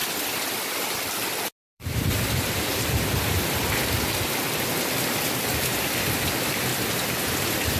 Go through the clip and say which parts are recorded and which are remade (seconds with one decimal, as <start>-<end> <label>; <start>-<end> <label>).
0.0-1.6 recorded; 1.6-6.7 remade; 6.7-7.2 recorded; 7.2-7.8 remade